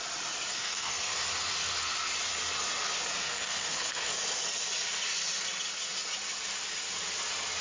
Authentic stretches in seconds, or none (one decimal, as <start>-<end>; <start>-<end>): 0.0-0.5; 1.2-3.2; 4.1-7.6